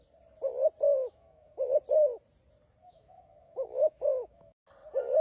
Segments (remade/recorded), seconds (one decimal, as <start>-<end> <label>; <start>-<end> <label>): 0.0-0.9 recorded; 0.9-1.7 remade; 1.7-2.8 recorded; 2.8-4.6 remade; 4.6-5.2 recorded